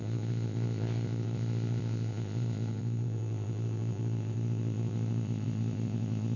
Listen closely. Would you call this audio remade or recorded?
remade